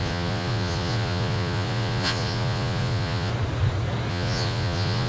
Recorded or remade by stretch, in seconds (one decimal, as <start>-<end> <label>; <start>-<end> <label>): 0.0-3.3 remade; 3.3-4.1 recorded; 4.1-5.1 remade

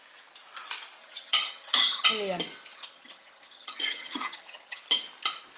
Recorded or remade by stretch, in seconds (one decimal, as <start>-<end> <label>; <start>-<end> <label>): 0.0-1.0 recorded; 1.0-2.1 remade; 2.1-2.7 recorded; 2.7-4.8 remade; 4.8-5.6 recorded

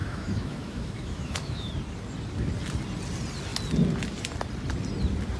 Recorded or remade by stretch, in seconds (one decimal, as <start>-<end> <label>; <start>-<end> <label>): 0.0-1.7 remade; 1.7-5.4 recorded

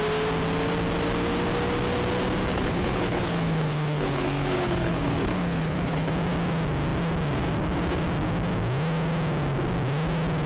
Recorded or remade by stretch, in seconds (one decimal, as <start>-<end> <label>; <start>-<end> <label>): 0.0-2.5 recorded; 2.5-6.1 remade; 6.1-10.5 recorded

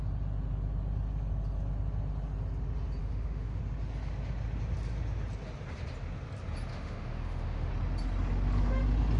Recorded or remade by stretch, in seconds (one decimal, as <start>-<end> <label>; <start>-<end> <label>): 0.0-3.0 recorded; 3.0-3.6 remade; 3.6-6.7 recorded; 6.7-7.7 remade; 7.7-9.2 recorded

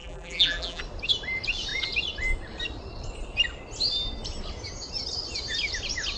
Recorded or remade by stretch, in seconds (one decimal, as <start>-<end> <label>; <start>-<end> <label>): 0.0-0.8 remade; 0.8-6.2 recorded

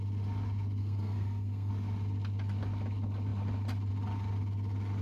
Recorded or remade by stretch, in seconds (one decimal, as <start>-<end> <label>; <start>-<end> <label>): 0.0-0.8 recorded; 0.8-1.7 remade; 1.7-5.0 recorded